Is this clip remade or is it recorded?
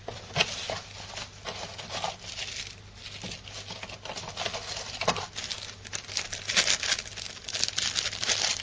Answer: recorded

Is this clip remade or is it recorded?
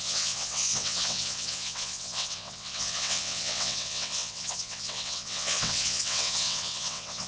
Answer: remade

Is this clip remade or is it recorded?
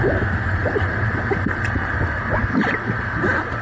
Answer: recorded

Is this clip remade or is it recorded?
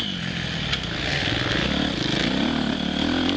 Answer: recorded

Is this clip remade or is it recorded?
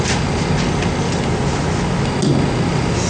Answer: recorded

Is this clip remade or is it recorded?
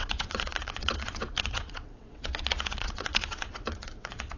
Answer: remade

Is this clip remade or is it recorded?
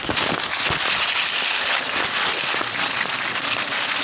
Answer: recorded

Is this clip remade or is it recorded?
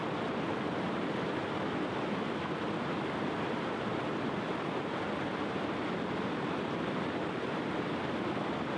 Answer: recorded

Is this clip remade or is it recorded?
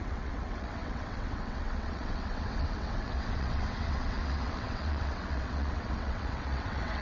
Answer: remade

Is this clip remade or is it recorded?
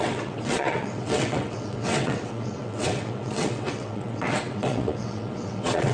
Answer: remade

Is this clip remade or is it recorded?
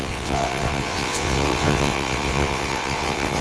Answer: remade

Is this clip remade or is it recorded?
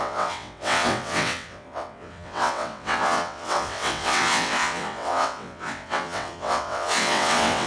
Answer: remade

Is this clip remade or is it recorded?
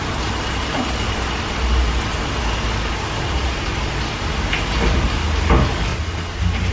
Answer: recorded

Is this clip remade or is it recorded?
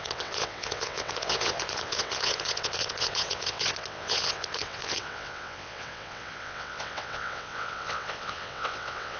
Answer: remade